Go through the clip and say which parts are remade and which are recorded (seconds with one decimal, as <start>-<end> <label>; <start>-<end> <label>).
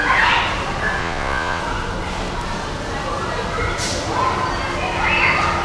0.0-1.0 recorded; 1.0-1.6 remade; 1.6-5.6 recorded